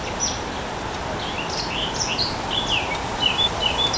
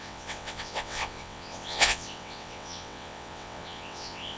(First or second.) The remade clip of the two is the second